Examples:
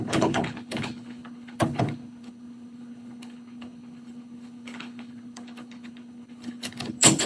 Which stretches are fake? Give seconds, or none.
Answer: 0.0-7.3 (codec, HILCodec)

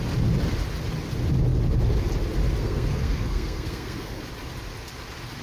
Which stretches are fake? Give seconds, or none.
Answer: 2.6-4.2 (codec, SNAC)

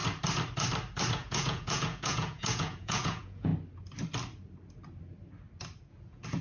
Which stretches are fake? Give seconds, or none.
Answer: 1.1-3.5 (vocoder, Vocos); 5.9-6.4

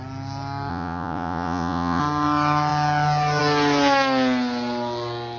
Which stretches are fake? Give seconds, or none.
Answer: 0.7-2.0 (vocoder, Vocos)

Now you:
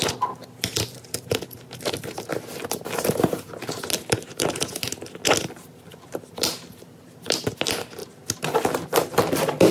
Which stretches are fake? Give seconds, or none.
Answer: none

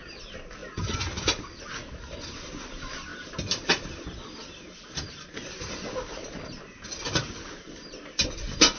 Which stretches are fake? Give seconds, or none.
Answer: none

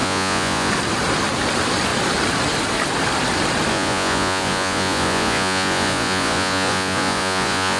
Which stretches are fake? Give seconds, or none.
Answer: 0.0-0.7 (vocoder, Vocos); 3.7-7.8